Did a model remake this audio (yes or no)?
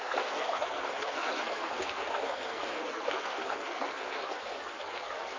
yes